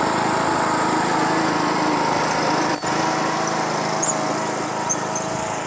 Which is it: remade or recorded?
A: recorded